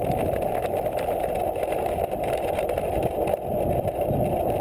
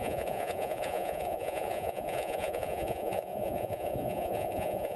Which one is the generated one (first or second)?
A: second